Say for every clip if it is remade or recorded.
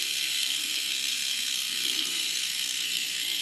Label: remade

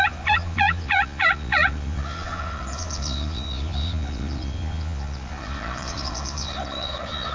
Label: remade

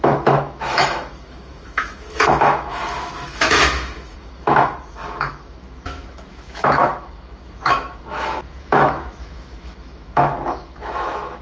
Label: remade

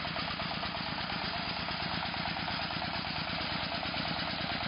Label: recorded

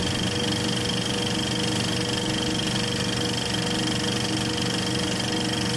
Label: recorded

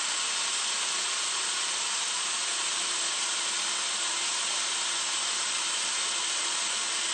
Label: recorded